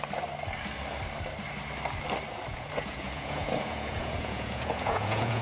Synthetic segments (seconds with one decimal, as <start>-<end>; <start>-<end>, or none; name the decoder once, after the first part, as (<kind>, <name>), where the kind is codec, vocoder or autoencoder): 2.5-5.4 (vocoder, Vocos)